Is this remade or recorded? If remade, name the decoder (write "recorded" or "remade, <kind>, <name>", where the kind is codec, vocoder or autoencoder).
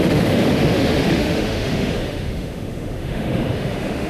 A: remade, autoencoder, DAC-VAE